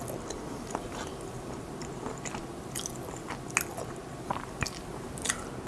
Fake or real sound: real